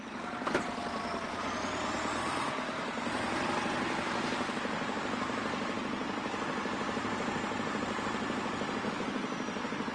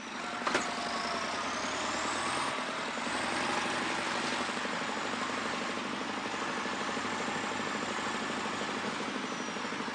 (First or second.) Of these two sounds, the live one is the second